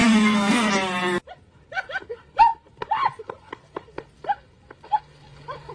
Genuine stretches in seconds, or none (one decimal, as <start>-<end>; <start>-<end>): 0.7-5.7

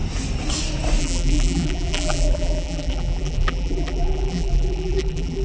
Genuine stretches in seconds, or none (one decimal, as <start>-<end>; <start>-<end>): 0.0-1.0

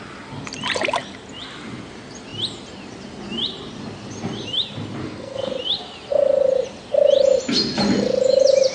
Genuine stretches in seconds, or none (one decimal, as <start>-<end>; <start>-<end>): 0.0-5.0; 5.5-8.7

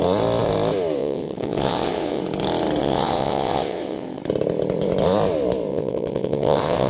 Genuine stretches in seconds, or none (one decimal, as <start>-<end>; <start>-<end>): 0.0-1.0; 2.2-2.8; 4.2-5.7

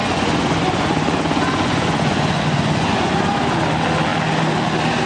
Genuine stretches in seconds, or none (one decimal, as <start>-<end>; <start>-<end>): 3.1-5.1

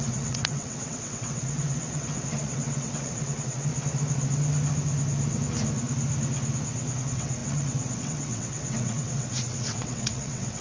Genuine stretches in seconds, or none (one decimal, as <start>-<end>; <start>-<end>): 3.7-7.0